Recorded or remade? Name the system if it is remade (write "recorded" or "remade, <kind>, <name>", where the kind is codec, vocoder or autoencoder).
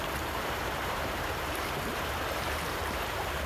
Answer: remade, vocoder, BigVGAN v2